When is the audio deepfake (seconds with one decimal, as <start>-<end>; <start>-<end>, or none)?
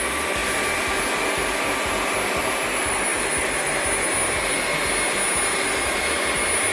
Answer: 3.1-3.7